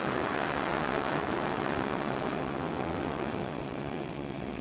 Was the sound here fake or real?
fake